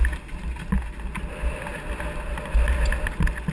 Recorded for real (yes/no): yes